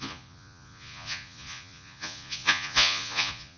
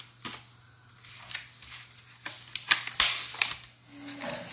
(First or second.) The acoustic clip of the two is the second